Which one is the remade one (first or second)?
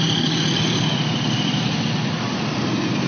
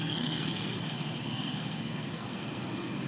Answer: second